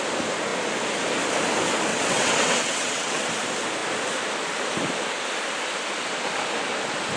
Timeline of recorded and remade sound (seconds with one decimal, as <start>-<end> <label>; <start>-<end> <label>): 0.0-1.9 recorded; 1.9-3.3 remade; 3.3-7.2 recorded